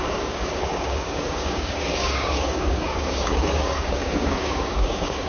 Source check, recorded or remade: remade